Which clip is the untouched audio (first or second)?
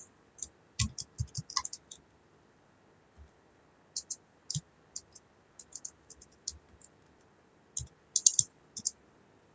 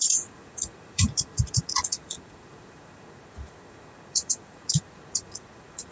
first